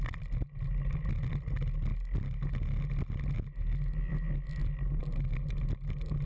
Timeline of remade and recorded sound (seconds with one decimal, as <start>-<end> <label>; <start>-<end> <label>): 0.0-6.3 recorded